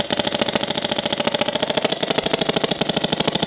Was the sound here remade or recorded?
recorded